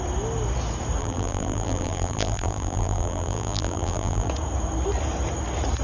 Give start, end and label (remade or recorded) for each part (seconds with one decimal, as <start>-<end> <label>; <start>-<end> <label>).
0.0-1.0 recorded; 1.0-4.3 remade; 4.3-5.8 recorded